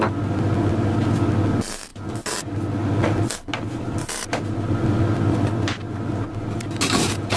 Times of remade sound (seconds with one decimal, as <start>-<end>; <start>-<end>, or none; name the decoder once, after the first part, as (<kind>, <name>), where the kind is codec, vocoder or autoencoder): none